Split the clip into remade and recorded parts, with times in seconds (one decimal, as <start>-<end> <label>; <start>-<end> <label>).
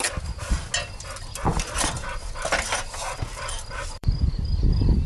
0.0-1.5 recorded; 1.5-2.3 remade; 2.3-3.3 recorded; 3.3-4.6 remade; 4.6-5.1 recorded